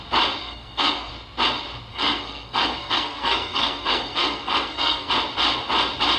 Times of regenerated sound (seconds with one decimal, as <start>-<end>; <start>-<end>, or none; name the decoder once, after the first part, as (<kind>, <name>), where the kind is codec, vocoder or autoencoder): 0.4-1.1 (codec, SNAC); 1.9-5.1